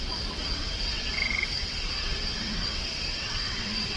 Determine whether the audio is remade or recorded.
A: remade